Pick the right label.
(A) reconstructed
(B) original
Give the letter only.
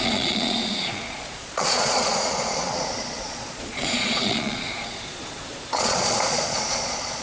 A